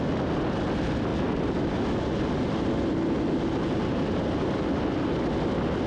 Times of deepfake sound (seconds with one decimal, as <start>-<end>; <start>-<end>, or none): none